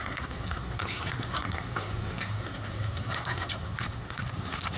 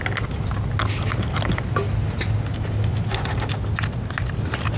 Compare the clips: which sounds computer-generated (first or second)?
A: first